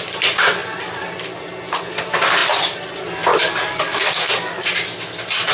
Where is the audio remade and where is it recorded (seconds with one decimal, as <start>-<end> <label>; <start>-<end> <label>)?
0.0-3.3 recorded; 3.3-4.7 remade; 4.7-5.5 recorded